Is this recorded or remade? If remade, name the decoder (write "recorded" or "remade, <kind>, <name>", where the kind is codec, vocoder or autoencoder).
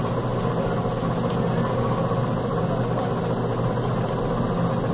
recorded